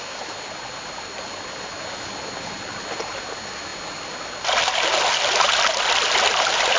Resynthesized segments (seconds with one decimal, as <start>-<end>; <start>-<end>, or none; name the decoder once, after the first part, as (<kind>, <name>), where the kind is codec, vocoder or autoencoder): none